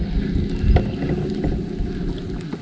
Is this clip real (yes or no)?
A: yes